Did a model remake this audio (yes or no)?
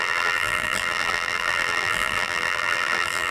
yes